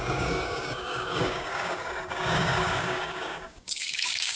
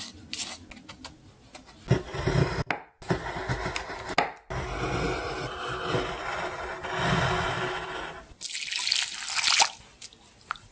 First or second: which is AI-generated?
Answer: first